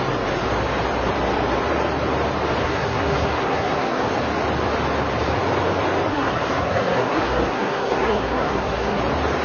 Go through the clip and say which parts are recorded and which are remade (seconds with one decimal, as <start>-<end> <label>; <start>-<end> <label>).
0.0-2.6 recorded; 2.6-4.1 remade; 4.1-6.1 recorded; 6.1-9.0 remade; 9.0-9.4 recorded